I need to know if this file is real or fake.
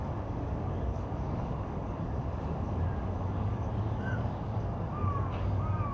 fake